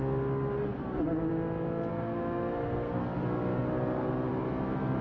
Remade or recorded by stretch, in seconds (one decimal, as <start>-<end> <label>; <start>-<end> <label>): 0.0-1.9 recorded; 1.9-3.0 remade; 3.0-5.0 recorded